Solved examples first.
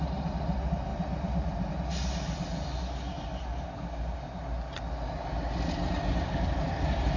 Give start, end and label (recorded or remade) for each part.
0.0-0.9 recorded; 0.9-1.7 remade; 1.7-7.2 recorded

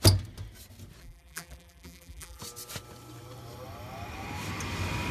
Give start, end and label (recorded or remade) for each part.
0.0-1.0 recorded; 1.0-2.4 remade; 2.4-5.1 recorded

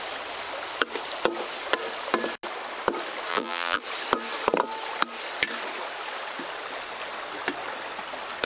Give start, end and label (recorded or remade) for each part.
0.0-3.3 recorded; 3.3-3.8 remade; 3.8-8.5 recorded

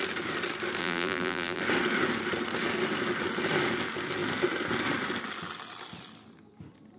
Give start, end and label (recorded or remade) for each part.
0.0-0.8 recorded; 0.8-1.6 remade; 1.6-7.0 recorded

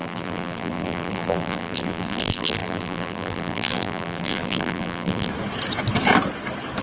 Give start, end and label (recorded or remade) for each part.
0.0-5.3 remade; 5.3-6.8 recorded

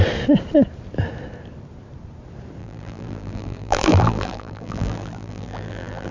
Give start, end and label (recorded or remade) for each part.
0.0-2.6 recorded; 2.6-6.1 remade